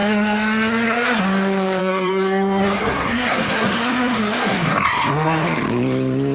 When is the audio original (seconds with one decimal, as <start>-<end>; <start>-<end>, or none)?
1.2-1.8; 5.6-6.3